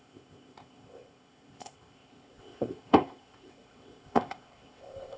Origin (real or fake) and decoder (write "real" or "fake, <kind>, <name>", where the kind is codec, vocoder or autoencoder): fake, codec, ZipCodec